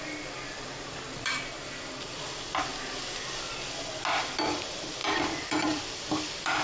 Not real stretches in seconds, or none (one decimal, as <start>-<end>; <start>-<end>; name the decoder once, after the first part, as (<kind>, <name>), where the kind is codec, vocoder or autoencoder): 0.0-2.7 (vocoder, BigVGAN v2); 4.2-6.6

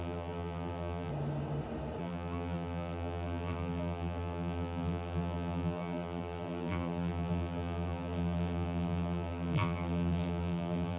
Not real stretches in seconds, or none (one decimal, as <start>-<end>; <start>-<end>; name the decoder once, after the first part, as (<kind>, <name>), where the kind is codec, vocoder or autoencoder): 0.0-1.1 (vocoder, BigVGAN v2); 2.0-11.0

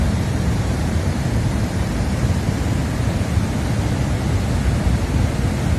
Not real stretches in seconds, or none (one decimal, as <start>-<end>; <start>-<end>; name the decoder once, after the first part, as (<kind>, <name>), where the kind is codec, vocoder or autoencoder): 0.0-2.8 (vocoder, BigVGAN v2)

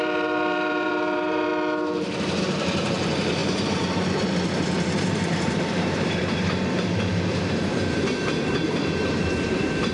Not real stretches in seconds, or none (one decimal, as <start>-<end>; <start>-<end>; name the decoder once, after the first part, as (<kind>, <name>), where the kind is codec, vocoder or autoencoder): 0.0-1.5 (vocoder, BigVGAN v2); 2.4-9.9

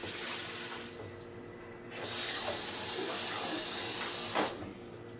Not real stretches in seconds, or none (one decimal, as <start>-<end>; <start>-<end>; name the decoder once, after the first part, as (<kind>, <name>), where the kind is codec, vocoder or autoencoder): none